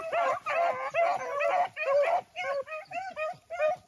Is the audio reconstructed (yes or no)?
no